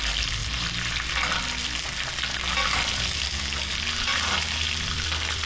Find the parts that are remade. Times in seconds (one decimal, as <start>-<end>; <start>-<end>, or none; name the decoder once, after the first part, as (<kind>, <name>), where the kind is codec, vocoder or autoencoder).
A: 0.0-0.4 (vocoder, BigVGAN v2); 3.7-5.5